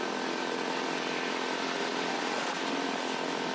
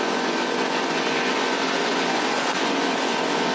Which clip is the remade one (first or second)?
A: second